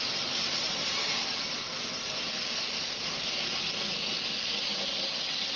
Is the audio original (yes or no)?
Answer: yes